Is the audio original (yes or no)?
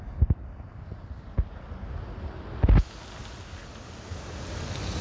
yes